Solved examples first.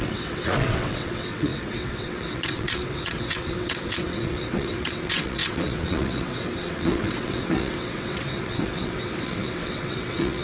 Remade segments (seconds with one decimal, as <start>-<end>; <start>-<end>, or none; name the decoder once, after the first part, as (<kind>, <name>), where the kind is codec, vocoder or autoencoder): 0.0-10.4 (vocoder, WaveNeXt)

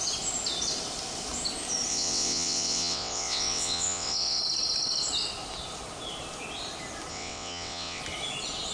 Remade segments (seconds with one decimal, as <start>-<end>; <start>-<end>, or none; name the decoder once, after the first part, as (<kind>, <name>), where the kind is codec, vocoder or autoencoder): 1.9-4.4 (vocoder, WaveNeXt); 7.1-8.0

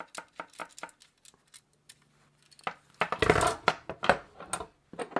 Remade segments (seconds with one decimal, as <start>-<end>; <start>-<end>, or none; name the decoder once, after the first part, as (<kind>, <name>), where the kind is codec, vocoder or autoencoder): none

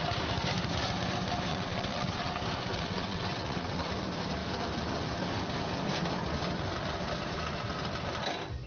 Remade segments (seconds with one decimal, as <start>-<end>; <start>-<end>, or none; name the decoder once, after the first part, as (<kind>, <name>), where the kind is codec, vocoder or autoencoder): 1.5-2.3 (vocoder, WaveNeXt); 2.7-3.9

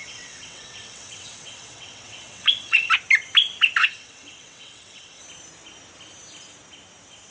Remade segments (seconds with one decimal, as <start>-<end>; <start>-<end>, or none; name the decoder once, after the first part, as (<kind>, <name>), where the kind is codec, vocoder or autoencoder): 0.0-2.9 (vocoder, WaveNeXt); 3.8-5.2